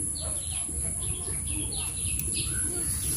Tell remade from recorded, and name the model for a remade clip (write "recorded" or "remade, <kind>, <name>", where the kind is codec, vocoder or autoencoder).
recorded